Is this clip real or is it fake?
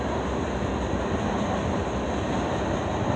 real